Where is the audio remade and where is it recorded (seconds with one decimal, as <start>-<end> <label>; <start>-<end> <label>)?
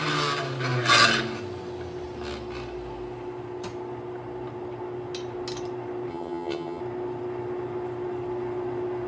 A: 0.0-6.1 recorded; 6.1-6.8 remade; 6.8-9.1 recorded